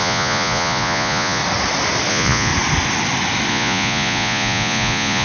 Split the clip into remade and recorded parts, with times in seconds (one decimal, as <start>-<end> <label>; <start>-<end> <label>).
0.0-1.4 remade; 1.4-2.1 recorded; 2.1-2.5 remade; 2.5-3.5 recorded; 3.5-5.2 remade